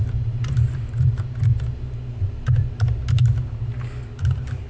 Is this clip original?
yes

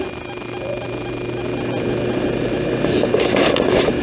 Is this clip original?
yes